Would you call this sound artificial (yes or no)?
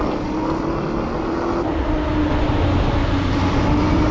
no